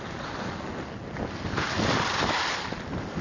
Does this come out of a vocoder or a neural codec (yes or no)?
no